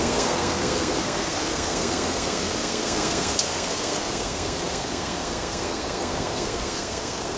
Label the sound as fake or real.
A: fake